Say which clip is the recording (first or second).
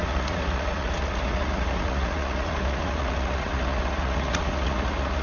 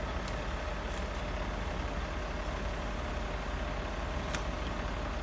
second